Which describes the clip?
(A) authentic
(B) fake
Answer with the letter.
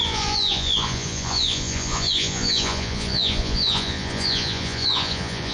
B